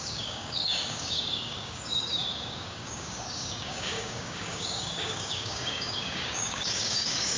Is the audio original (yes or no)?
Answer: no